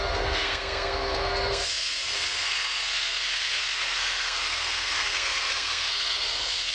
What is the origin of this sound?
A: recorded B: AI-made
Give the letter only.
B